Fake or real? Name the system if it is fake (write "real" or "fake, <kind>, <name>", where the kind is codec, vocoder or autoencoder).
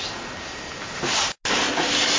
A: real